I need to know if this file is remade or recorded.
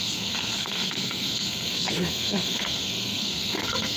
remade